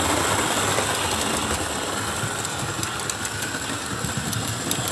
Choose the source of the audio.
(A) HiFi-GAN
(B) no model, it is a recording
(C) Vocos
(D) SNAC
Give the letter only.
B